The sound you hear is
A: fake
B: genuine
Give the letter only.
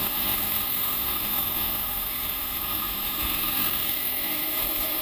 A